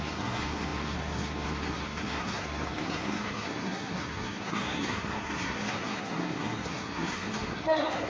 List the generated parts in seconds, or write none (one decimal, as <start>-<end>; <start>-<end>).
0.0-8.1